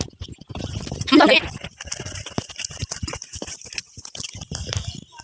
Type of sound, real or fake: real